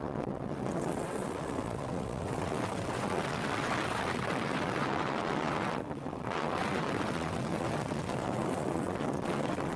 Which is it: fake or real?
fake